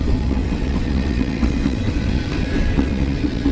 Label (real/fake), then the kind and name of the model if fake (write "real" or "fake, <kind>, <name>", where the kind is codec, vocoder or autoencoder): fake, vocoder, WaveNeXt